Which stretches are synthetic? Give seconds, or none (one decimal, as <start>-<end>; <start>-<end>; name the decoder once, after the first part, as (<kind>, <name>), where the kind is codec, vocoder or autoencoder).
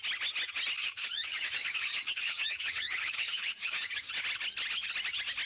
0.8-4.1 (codec, DAC)